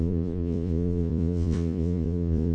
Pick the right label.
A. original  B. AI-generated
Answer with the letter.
B